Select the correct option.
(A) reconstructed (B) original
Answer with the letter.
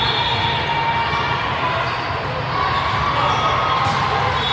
B